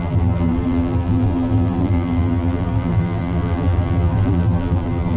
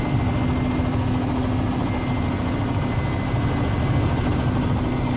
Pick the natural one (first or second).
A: second